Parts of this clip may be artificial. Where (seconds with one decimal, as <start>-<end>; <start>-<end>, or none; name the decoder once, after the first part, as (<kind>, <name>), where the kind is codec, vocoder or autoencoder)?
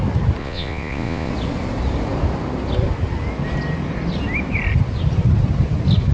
0.4-1.3 (vocoder, Vocos)